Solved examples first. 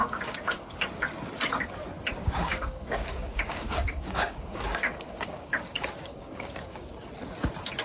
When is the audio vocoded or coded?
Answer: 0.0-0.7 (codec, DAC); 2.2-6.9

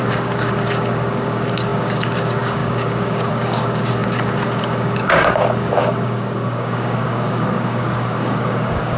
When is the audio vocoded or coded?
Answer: 0.0-9.0 (codec, DAC)

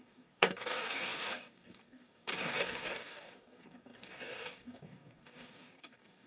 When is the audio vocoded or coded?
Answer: 0.0-6.3 (codec, DAC)

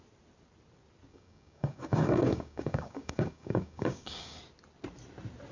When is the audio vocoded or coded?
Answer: 1.1-4.4 (codec, DAC)

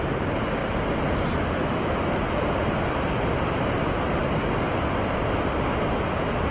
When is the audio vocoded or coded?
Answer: none